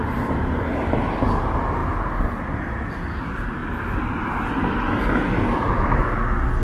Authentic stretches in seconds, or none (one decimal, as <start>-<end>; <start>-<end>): 0.0-1.8; 3.2-3.6; 5.7-6.6